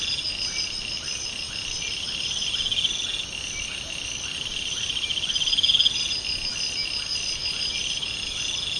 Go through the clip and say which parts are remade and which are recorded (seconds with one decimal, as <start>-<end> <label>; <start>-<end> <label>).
0.0-8.8 recorded